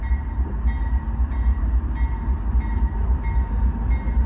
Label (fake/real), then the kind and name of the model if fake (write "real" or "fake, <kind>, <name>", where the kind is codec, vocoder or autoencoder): real